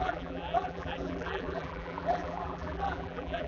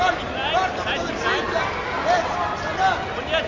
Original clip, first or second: second